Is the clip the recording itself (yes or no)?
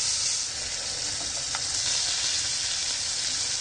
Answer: yes